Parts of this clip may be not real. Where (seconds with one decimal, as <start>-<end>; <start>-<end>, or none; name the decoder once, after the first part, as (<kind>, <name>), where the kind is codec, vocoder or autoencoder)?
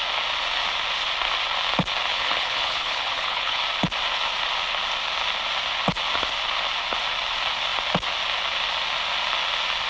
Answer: 2.1-3.6 (codec, HILCodec)